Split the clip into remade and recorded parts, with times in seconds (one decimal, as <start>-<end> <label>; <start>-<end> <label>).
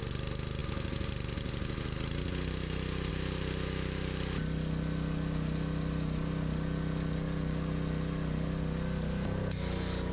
0.0-10.1 recorded